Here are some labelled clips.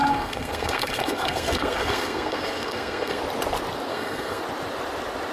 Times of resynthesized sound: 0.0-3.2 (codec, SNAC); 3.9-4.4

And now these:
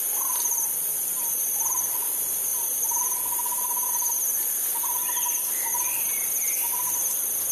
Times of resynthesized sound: none

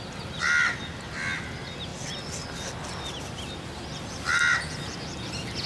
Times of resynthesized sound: none

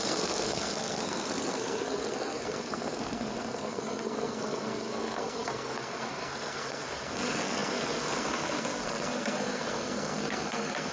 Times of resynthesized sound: 0.0-10.9 (codec, SNAC)

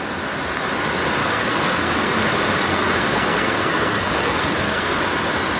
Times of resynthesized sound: 1.2-2.1 (codec, SNAC); 2.7-5.0

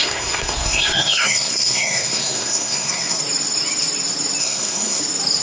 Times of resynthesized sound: 0.0-3.2 (codec, SNAC); 4.4-5.0

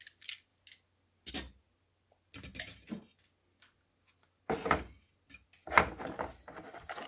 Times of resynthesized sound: none

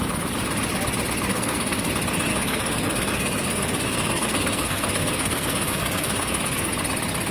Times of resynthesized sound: 1.3-1.9 (codec, SNAC); 2.3-6.7